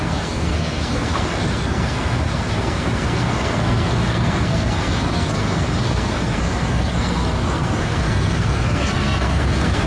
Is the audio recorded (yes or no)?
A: no